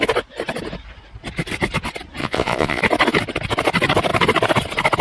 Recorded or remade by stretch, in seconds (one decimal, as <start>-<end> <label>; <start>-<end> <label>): 0.0-2.2 recorded; 2.2-2.8 remade; 2.8-5.0 recorded